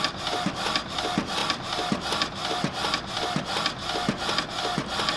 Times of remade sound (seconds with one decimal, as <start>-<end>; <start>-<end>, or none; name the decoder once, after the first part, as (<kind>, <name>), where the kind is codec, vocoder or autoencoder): none